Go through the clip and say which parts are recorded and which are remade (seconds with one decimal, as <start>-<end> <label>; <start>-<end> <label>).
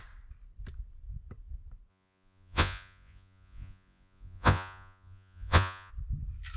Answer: 0.0-1.9 recorded; 1.9-5.9 remade; 5.9-6.6 recorded